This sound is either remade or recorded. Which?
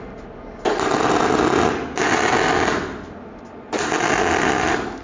recorded